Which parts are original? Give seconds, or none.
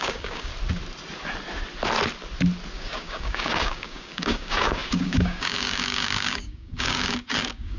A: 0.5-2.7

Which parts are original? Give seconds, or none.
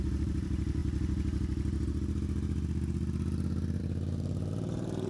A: 0.8-3.8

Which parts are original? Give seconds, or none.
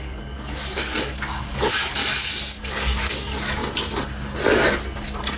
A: 2.0-2.6; 3.6-5.4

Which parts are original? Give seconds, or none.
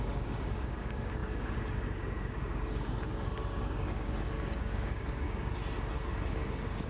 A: 5.6-6.3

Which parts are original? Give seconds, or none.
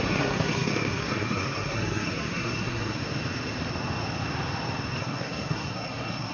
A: 3.0-5.0